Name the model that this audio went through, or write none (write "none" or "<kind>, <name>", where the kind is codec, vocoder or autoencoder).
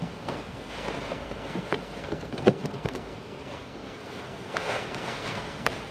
codec, SNAC